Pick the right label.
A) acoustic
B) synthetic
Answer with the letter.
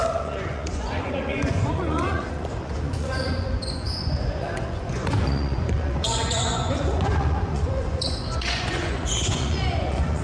B